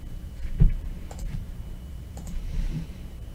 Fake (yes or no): yes